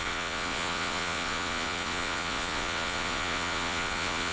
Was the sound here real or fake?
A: fake